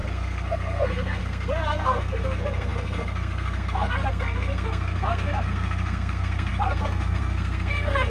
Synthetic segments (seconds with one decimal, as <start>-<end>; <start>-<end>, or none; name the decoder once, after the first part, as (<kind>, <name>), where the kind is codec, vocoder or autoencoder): 0.0-8.1 (codec, SNAC)